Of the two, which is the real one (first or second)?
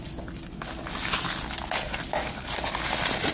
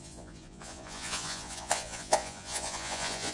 first